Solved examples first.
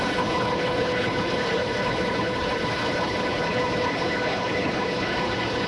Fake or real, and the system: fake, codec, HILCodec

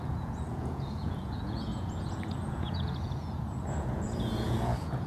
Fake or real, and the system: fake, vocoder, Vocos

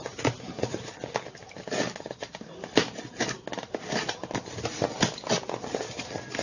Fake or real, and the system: real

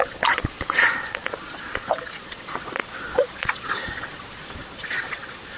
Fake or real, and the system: fake, vocoder, Vocos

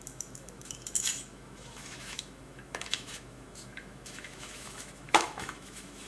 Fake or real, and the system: fake, autoencoder, DAC-VAE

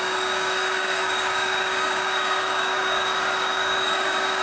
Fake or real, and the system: fake, codec, DAC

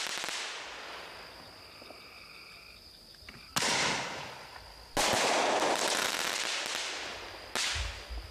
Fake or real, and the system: real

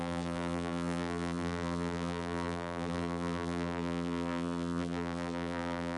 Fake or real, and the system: fake, vocoder, BigVGAN v2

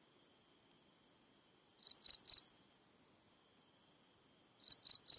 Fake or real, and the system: real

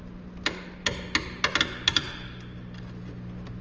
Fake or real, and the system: real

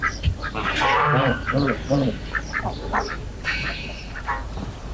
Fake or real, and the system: fake, vocoder, BigVGAN v2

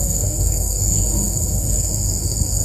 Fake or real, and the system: fake, codec, SNAC